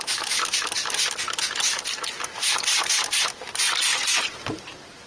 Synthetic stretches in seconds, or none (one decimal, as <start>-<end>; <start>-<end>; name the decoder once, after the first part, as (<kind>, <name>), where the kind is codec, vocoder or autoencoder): 3.9-4.4 (vocoder, Vocos)

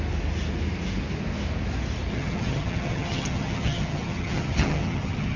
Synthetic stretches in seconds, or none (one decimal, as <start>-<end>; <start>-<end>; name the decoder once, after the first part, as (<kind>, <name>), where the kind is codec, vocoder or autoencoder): 2.1-5.4 (vocoder, HiFi-GAN)

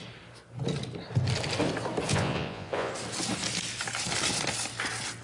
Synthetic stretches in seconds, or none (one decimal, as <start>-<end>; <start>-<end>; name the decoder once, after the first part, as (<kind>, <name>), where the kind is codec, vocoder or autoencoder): 2.1-2.9 (vocoder, Vocos)

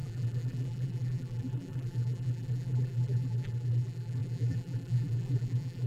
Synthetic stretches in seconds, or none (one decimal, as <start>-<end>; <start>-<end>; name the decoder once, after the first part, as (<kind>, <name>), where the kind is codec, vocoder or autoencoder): 0.0-5.9 (vocoder, BigVGAN v2)

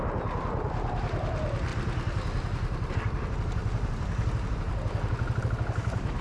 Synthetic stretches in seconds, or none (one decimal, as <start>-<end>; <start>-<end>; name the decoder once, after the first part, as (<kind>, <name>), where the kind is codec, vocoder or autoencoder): none

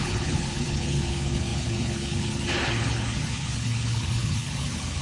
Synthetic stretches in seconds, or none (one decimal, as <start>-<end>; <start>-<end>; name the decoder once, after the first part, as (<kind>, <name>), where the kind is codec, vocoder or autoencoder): 0.0-5.0 (codec, HILCodec)

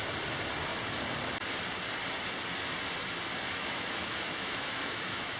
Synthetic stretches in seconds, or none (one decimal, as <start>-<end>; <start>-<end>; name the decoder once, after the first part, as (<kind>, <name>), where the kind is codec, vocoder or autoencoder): 3.5-5.4 (autoencoder, DAC-VAE)

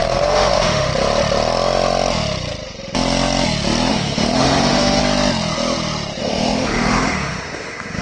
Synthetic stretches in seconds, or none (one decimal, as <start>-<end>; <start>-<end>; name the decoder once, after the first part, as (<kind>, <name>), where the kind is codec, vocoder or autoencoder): 0.0-0.9 (autoencoder, DAC-VAE); 3.9-5.0; 6.2-8.0